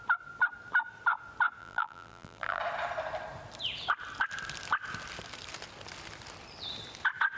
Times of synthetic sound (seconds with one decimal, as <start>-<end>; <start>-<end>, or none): 1.6-2.6